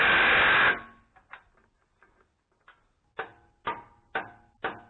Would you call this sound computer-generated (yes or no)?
no